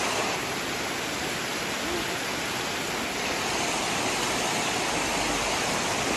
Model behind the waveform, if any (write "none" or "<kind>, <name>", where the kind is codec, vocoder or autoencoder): none